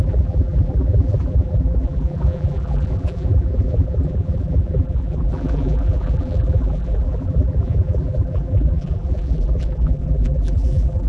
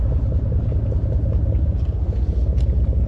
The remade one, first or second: first